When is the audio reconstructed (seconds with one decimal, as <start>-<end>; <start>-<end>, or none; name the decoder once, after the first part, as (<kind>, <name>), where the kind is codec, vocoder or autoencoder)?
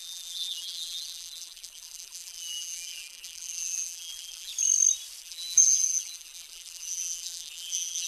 0.0-4.5 (vocoder, BigVGAN v2); 5.2-8.1